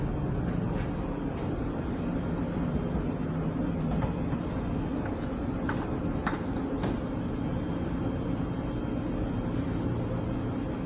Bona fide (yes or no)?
yes